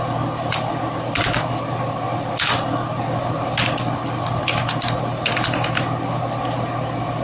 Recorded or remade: recorded